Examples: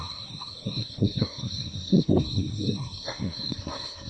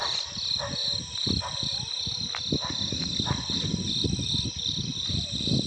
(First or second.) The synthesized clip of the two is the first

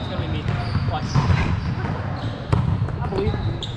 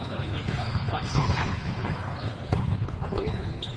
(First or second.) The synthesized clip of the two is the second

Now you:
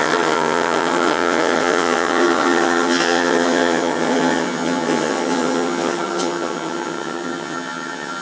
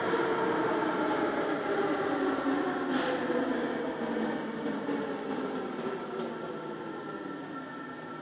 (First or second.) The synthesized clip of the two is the first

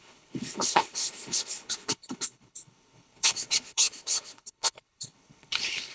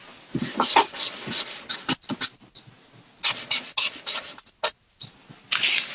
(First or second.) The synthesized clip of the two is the first